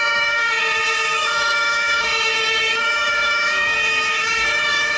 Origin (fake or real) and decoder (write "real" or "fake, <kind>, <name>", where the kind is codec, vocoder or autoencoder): fake, autoencoder, DAC-VAE